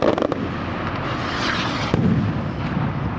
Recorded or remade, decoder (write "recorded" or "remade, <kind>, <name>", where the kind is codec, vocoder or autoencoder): recorded